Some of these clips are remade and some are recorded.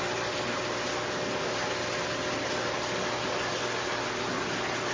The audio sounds recorded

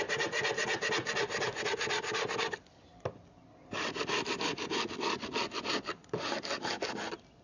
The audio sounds recorded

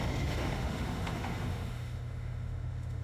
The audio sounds remade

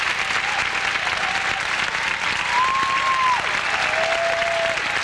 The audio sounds recorded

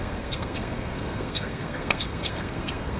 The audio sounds remade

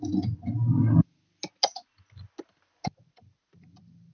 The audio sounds recorded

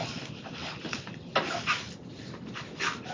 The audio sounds recorded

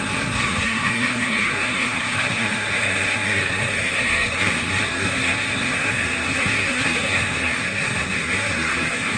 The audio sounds remade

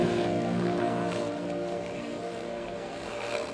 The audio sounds remade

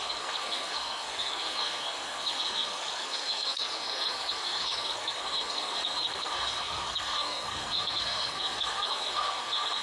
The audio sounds remade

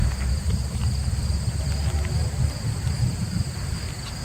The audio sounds recorded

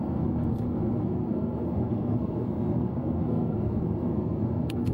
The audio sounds remade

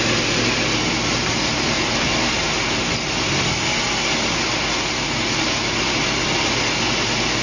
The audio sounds recorded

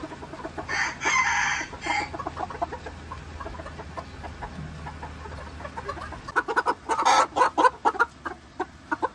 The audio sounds recorded